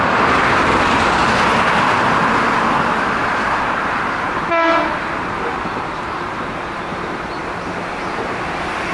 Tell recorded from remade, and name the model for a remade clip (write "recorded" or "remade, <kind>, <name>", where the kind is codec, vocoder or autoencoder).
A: recorded